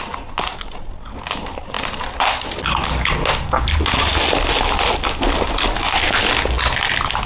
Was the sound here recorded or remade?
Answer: recorded